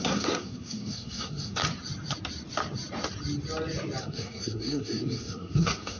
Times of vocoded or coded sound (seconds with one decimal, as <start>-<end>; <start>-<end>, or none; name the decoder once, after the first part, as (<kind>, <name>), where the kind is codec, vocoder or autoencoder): 0.0-1.6 (codec, SNAC); 4.0-6.0